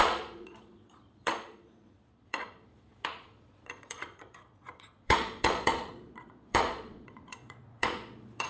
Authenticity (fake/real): fake